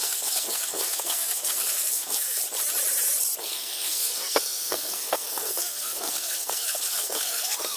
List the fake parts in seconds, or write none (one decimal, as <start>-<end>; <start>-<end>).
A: 0.0-2.4; 3.4-7.8